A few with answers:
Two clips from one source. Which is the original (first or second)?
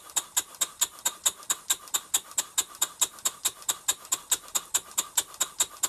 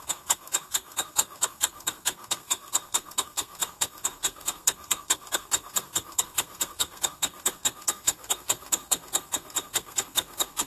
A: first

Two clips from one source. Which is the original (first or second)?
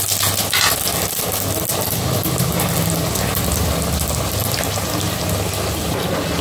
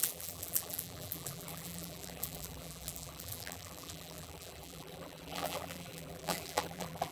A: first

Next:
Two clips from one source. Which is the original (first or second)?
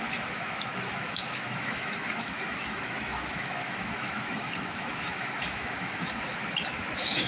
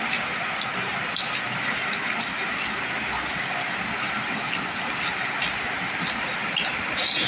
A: second